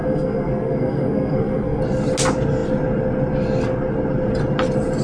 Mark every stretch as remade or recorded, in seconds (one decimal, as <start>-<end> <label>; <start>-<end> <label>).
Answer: 0.0-1.8 remade; 1.8-5.0 recorded